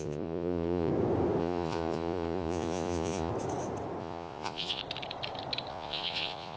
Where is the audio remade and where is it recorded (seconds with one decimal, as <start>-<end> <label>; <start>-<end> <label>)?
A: 0.0-0.9 remade; 0.9-1.4 recorded; 1.4-3.3 remade; 3.3-4.0 recorded; 4.0-4.8 remade; 4.8-5.7 recorded; 5.7-6.6 remade